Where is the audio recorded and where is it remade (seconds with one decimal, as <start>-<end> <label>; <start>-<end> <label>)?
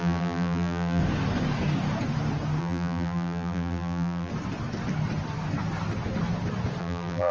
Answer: 0.0-1.0 remade; 1.0-2.6 recorded; 2.6-4.3 remade; 4.3-6.8 recorded; 6.8-7.3 remade